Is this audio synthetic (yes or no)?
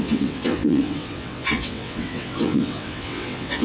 yes